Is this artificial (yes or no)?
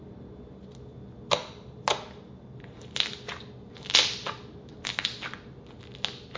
no